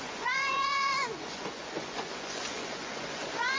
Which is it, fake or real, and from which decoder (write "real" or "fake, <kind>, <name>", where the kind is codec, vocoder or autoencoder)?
fake, vocoder, Vocos